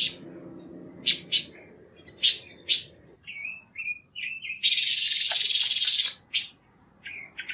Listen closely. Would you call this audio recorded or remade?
recorded